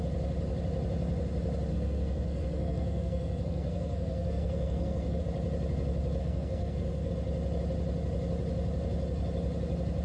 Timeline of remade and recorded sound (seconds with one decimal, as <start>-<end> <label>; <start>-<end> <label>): 0.0-1.7 recorded; 1.7-5.2 remade; 5.2-6.2 recorded; 6.2-7.1 remade; 7.1-10.0 recorded